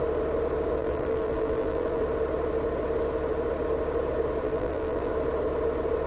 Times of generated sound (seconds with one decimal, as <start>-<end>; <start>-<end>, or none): 0.8-2.0; 4.4-5.1